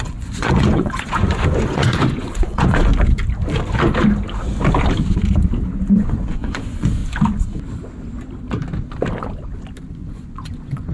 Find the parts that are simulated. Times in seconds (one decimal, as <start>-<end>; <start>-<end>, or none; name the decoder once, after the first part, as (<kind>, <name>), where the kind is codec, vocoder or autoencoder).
0.0-2.9 (vocoder, Vocos); 5.9-7.0; 9.9-10.9

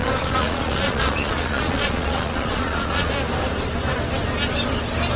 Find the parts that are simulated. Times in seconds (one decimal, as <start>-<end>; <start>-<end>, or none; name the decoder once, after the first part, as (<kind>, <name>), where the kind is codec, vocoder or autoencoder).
0.0-3.1 (vocoder, Vocos)

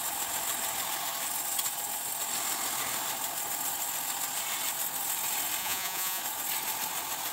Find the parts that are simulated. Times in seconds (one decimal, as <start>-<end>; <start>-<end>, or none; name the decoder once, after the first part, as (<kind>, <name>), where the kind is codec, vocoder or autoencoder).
5.6-6.2 (vocoder, Vocos)

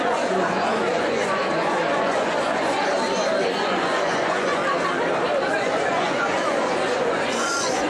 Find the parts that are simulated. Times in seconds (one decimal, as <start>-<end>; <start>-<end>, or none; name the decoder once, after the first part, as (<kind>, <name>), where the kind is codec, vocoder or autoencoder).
0.0-2.9 (vocoder, Vocos); 3.4-4.6; 5.5-7.9